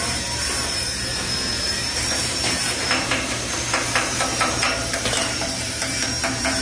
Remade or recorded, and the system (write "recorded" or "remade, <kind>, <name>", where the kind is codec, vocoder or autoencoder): remade, vocoder, BigVGAN v2